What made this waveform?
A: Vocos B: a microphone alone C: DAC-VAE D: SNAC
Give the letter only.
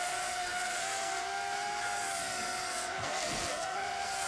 D